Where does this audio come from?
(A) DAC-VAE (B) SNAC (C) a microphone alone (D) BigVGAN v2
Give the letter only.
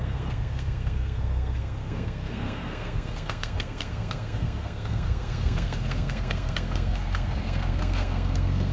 B